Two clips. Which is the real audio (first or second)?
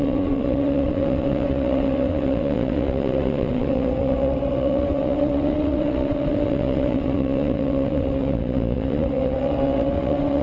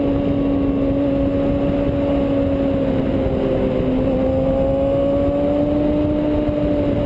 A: second